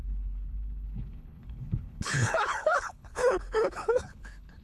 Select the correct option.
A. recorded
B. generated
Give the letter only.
B